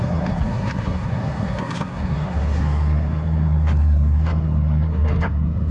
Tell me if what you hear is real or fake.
fake